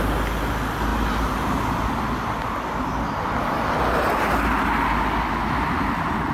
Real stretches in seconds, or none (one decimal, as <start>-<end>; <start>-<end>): 0.0-6.3